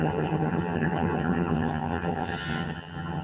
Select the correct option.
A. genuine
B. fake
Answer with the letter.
B